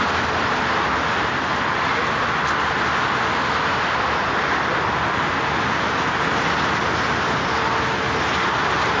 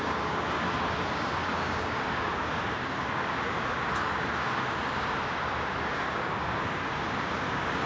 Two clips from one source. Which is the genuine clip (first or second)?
first